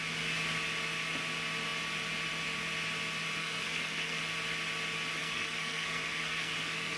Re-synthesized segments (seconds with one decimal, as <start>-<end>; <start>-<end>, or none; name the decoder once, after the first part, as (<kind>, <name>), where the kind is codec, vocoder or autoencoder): 3.4-4.2 (codec, SNAC); 5.2-7.0